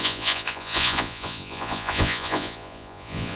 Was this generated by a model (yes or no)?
yes